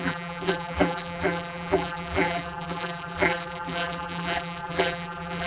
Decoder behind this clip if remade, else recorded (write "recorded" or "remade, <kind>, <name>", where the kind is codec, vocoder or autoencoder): remade, vocoder, BigVGAN v2